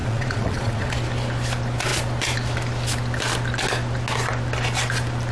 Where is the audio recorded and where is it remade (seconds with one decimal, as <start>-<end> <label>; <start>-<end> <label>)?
0.0-0.9 remade; 0.9-5.3 recorded